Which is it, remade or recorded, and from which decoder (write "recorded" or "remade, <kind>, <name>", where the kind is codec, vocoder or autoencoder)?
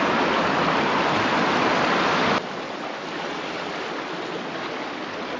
recorded